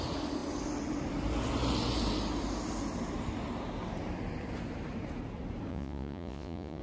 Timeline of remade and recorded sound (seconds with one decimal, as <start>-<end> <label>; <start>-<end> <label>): 0.0-5.7 recorded; 5.7-6.8 remade